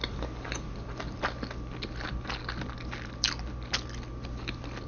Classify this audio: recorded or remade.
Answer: recorded